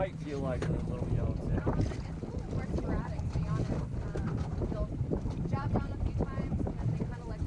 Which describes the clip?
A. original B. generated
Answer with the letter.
A